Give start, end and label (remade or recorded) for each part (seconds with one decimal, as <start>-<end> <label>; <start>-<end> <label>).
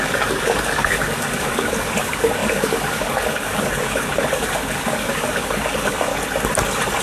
0.0-6.1 remade; 6.1-7.0 recorded